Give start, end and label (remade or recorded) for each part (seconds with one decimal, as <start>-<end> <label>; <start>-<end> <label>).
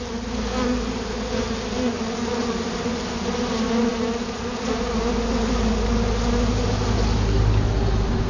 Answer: 0.0-8.3 recorded